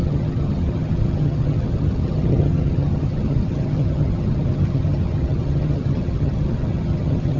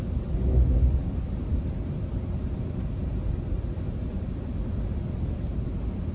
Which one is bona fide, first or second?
second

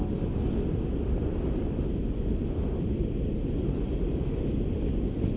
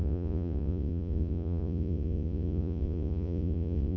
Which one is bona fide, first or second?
first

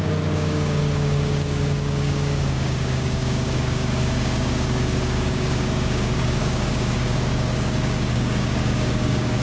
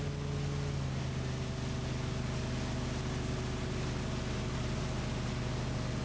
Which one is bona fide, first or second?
second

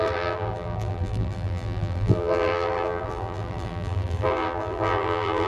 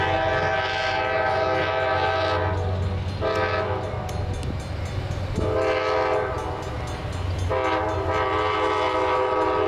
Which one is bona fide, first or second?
second